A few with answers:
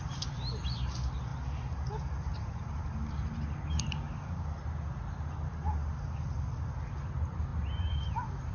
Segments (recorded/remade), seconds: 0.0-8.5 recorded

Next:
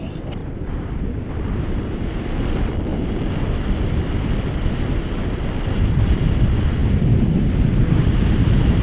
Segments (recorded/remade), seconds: 0.0-2.9 remade; 2.9-3.6 recorded; 3.6-8.8 remade

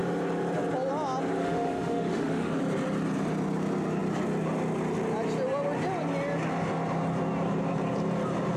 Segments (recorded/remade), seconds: 0.0-1.4 recorded; 1.4-2.5 remade; 2.5-8.6 recorded